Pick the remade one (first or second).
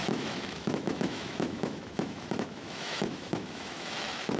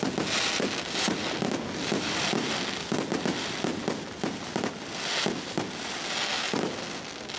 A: first